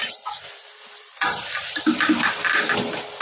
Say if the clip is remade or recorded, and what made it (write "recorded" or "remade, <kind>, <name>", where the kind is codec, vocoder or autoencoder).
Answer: remade, vocoder, BigVGAN v2